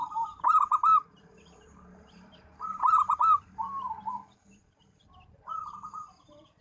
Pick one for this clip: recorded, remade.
remade